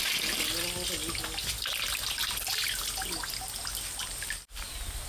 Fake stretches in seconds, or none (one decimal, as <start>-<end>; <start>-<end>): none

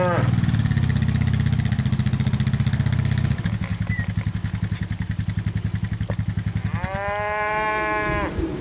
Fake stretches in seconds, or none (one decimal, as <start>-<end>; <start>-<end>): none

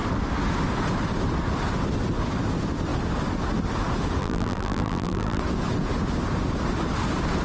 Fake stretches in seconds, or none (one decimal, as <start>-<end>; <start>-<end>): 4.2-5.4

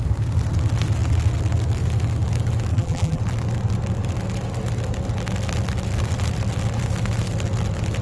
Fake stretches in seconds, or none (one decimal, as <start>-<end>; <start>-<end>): 2.7-3.2

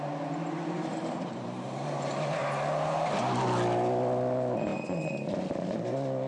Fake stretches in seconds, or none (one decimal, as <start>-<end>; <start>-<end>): 2.4-3.1